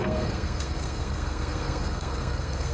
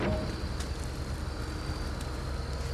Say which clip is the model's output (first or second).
first